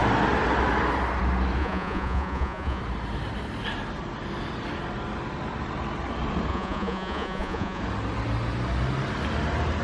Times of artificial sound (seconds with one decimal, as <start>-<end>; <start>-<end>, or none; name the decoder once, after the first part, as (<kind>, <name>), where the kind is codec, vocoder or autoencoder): 1.6-2.8 (vocoder, Vocos); 6.5-7.8